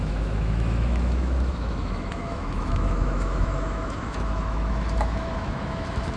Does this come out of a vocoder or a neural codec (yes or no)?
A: yes